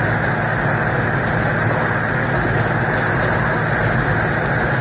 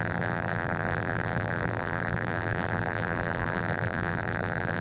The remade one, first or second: second